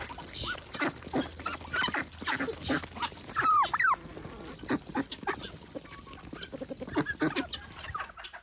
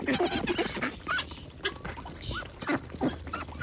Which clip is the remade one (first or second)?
second